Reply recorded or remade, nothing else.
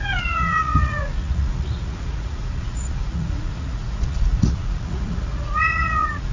remade